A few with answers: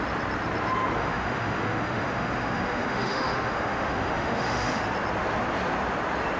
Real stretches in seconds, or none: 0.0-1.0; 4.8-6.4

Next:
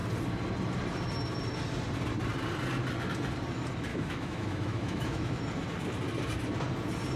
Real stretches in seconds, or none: 0.0-3.9; 5.4-7.2

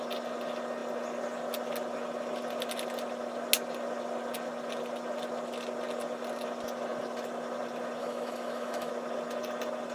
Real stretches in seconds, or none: 0.0-8.0; 8.9-9.9

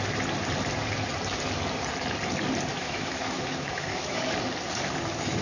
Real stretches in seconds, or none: 0.0-2.7; 4.2-5.4

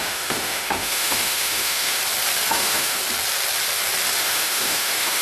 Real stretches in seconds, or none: 2.0-2.5; 3.0-4.2

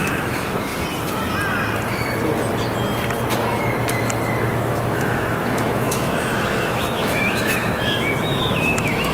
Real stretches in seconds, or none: 0.7-4.5

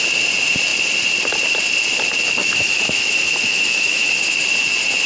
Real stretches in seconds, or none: 0.0-2.4; 4.1-5.1

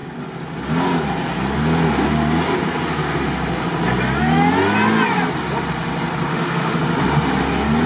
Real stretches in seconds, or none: 0.0-6.3; 6.8-7.9